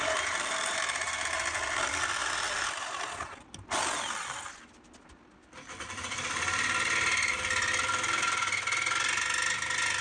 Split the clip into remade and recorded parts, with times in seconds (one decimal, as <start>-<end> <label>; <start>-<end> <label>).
0.0-10.0 recorded